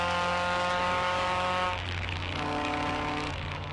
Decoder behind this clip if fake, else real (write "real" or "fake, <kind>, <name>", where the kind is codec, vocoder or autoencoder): fake, codec, DAC